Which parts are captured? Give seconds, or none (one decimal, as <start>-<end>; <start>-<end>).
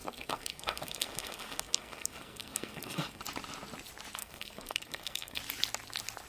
3.2-4.2; 5.4-6.3